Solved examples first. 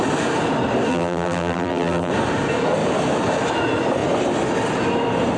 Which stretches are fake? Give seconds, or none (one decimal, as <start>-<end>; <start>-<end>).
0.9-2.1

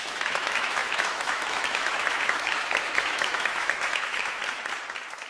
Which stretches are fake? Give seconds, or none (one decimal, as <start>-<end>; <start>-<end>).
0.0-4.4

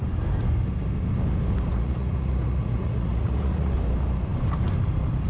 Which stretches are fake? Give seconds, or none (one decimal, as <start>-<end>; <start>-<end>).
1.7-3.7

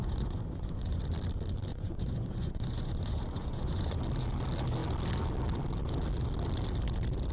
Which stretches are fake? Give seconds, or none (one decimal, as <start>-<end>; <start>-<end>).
0.0-1.0; 1.7-4.0

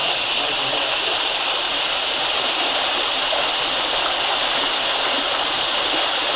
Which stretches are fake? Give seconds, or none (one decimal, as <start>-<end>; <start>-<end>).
none